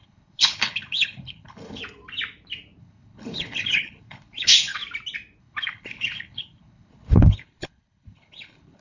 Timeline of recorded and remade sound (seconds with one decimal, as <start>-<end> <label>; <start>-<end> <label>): 0.0-1.8 remade; 1.8-2.8 recorded; 2.8-4.8 remade; 4.8-5.4 recorded; 5.4-8.8 remade